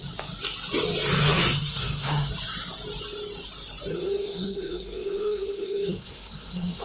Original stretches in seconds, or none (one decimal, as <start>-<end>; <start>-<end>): 0.0-1.2; 2.3-3.9